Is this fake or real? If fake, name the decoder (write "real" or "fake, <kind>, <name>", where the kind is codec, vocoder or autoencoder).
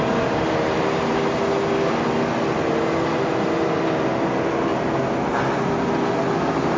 real